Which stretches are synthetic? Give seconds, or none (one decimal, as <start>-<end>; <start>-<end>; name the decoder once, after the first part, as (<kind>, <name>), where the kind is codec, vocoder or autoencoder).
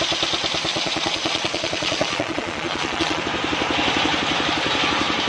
0.7-3.2 (vocoder, Vocos)